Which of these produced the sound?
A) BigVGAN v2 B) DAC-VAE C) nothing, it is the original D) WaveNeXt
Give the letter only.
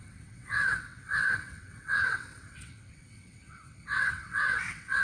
D